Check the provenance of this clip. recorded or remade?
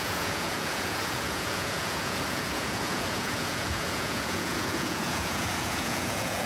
remade